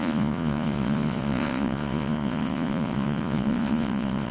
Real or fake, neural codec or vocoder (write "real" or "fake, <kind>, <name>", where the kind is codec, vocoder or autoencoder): fake, vocoder, Vocos